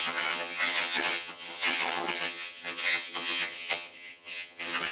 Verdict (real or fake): fake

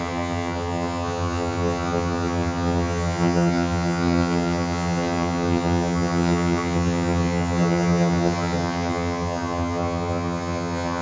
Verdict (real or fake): fake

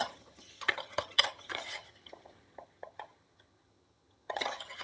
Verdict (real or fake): fake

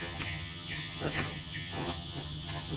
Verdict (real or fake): fake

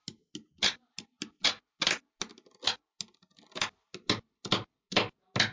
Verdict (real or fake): real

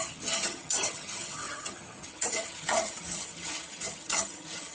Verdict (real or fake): fake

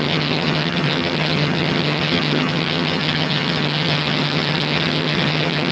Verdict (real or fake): fake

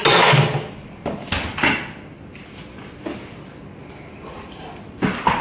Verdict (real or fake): real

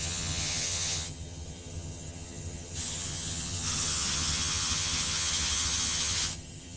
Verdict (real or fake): fake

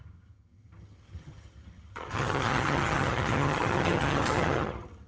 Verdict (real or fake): fake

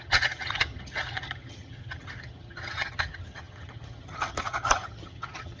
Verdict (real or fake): fake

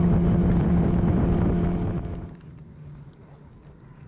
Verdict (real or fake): real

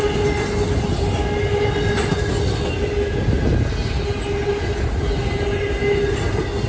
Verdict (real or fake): real